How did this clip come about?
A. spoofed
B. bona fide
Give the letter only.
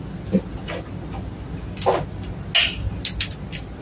B